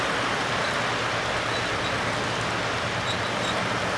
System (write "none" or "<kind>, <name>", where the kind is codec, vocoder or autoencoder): none